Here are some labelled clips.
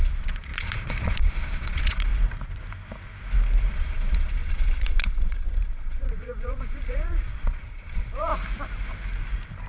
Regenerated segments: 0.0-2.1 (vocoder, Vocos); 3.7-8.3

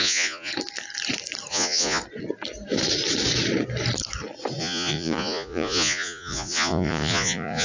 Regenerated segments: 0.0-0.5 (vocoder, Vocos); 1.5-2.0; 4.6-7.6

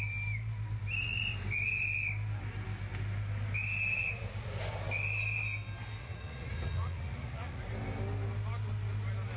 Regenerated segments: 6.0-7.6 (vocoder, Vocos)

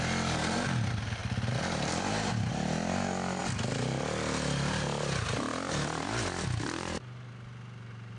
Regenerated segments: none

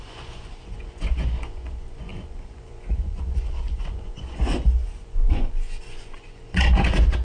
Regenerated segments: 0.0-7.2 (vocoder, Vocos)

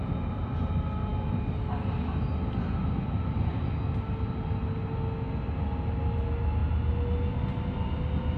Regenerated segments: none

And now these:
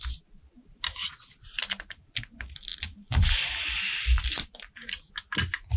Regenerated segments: none

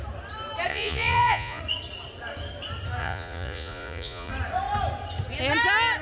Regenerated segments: 0.7-1.6 (vocoder, Vocos); 3.0-4.3